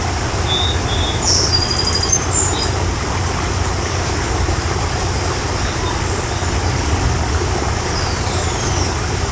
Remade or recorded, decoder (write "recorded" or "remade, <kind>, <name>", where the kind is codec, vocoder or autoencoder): recorded